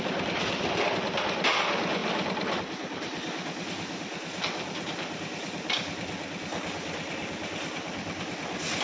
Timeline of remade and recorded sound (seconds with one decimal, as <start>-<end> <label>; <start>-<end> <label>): 0.0-8.8 recorded